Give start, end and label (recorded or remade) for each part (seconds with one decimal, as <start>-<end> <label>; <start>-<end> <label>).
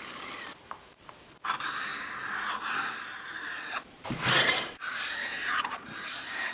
0.0-1.9 remade; 1.9-2.5 recorded; 2.5-6.5 remade